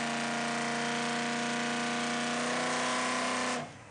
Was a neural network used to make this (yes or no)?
no